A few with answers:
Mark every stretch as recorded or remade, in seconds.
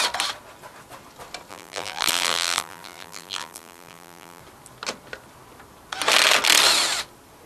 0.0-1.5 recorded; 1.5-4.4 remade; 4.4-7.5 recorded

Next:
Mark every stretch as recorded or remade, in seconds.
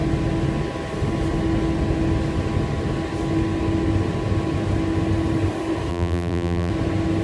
0.0-5.9 recorded; 5.9-6.7 remade; 6.7-7.2 recorded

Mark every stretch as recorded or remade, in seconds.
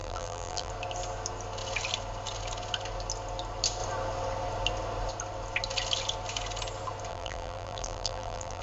0.0-0.7 remade; 0.7-7.1 recorded; 7.1-8.6 remade